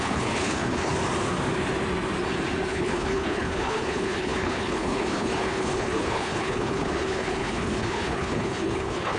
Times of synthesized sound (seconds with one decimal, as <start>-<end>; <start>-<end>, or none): 0.0-0.9; 2.7-9.2